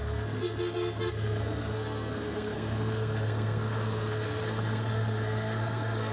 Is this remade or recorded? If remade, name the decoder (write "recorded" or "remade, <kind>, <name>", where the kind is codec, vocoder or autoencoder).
remade, codec, SNAC